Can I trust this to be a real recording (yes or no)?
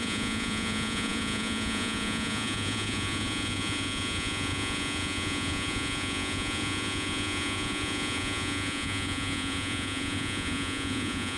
no